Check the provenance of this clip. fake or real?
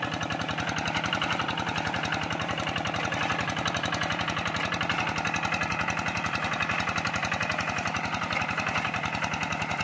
fake